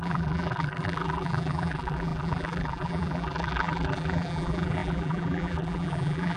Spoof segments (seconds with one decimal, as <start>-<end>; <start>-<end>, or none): 0.0-6.4